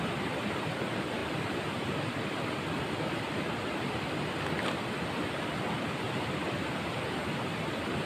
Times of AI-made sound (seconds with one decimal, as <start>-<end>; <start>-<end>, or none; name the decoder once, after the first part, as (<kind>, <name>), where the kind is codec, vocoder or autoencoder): 1.2-4.9 (vocoder, BigVGAN v2)